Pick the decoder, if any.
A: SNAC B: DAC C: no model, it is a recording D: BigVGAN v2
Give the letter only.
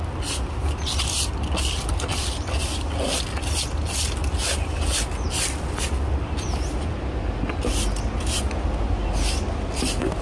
C